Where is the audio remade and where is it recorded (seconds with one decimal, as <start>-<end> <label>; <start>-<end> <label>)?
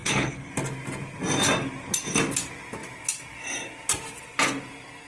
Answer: 0.0-0.5 remade; 0.5-5.1 recorded